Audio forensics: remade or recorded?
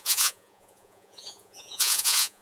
remade